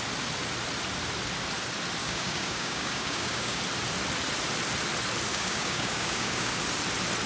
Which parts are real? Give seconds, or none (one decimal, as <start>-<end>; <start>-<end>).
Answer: 0.0-2.0; 3.6-5.3; 6.6-7.3